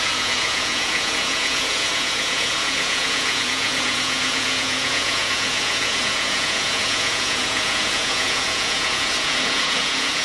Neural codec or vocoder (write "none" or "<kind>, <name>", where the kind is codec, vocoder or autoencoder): vocoder, Vocos